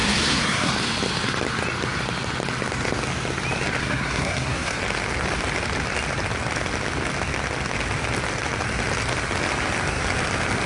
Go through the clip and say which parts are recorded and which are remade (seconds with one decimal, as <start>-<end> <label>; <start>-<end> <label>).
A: 0.0-0.7 remade; 0.7-3.8 recorded; 3.8-4.8 remade; 4.8-10.7 recorded